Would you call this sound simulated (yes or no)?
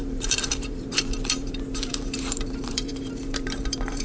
yes